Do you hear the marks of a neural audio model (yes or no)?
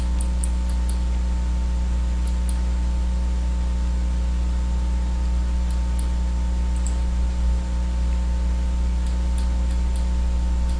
no